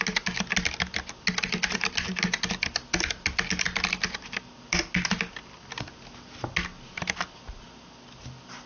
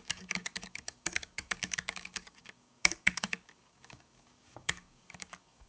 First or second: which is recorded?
first